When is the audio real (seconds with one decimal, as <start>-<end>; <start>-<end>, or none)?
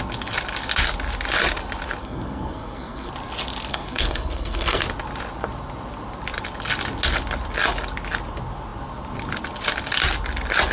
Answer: 0.0-2.0; 3.1-3.7; 4.8-10.7